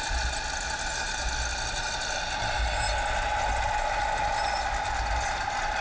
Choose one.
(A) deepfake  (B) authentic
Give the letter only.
B